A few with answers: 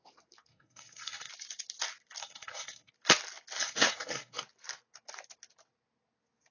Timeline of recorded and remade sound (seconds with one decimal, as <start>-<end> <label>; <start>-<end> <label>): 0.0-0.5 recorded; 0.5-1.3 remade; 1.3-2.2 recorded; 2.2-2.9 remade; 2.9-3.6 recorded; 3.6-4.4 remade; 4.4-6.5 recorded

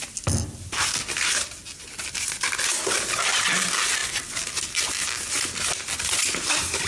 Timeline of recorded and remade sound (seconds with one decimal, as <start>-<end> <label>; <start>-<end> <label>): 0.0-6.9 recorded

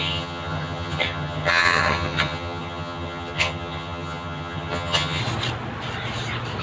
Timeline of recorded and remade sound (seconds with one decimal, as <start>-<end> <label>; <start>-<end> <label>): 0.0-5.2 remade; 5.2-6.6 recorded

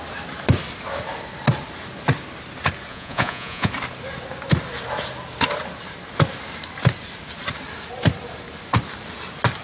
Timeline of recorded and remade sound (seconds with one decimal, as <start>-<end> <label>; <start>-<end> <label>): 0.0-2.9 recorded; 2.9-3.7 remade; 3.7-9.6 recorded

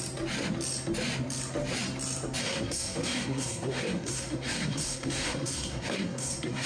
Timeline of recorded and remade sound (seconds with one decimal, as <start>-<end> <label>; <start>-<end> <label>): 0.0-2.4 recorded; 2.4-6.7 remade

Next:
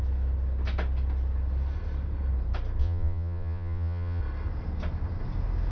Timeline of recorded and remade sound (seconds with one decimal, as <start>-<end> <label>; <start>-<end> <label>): 0.0-2.8 recorded; 2.8-4.2 remade; 4.2-5.7 recorded

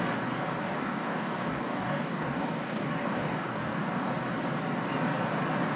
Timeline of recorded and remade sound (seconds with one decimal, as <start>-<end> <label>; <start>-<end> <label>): 0.0-0.6 recorded; 0.6-4.1 remade; 4.1-5.8 recorded

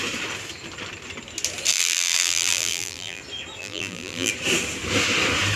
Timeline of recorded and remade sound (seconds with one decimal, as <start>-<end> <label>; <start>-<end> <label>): 0.0-1.7 recorded; 1.7-3.2 remade; 3.2-3.6 recorded; 3.6-4.3 remade; 4.3-5.6 recorded